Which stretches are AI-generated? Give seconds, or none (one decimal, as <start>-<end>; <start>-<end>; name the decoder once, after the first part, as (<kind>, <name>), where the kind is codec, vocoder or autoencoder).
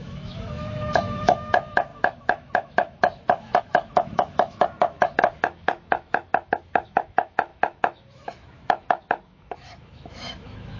0.0-10.8 (autoencoder, DAC-VAE)